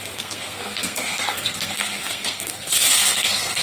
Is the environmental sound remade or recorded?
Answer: remade